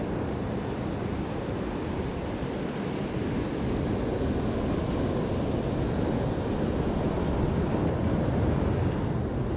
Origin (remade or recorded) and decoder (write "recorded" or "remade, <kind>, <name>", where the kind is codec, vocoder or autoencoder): recorded